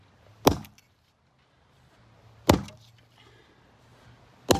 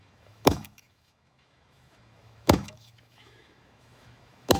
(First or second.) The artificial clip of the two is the second